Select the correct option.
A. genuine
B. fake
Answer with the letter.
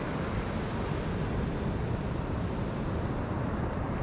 A